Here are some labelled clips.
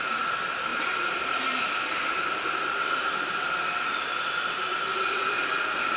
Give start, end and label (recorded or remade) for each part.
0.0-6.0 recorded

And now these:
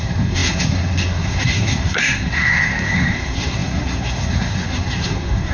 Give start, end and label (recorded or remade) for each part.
0.0-5.5 remade

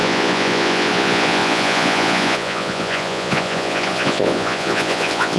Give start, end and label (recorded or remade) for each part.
0.0-5.4 remade

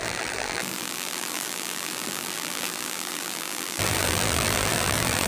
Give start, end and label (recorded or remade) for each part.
0.0-5.3 remade